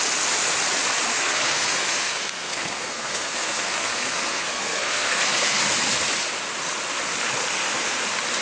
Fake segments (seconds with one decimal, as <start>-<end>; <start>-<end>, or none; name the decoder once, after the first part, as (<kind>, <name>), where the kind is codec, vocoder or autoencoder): 1.1-5.6 (codec, SNAC)